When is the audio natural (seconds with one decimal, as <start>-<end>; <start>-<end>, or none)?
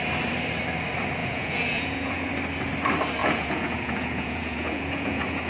0.0-1.2; 2.3-3.2